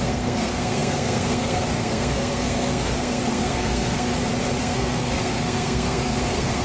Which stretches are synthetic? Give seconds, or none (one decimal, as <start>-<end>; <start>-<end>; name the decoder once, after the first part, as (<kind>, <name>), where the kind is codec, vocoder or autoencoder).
0.0-4.1 (codec, SNAC); 4.6-6.6

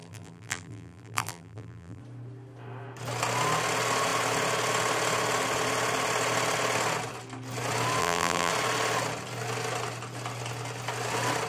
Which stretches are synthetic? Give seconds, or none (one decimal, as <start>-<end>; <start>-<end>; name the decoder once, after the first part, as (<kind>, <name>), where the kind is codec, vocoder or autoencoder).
0.0-2.0 (vocoder, BigVGAN v2); 8.0-8.5

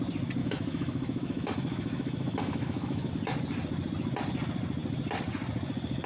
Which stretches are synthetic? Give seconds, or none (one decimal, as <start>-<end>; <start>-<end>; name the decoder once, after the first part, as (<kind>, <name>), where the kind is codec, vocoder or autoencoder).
0.4-3.1 (autoencoder, DAC-VAE)

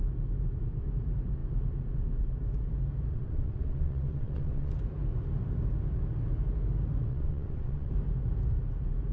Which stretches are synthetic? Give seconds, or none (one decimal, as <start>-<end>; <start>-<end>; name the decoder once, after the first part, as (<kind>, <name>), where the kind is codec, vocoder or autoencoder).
3.1-4.7 (vocoder, WaveNeXt); 7.1-7.9

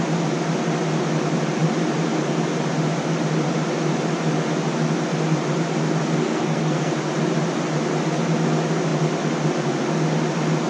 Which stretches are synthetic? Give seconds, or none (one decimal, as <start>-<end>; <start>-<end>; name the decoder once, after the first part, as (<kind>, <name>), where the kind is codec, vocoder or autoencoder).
6.2-6.9 (codec, SNAC)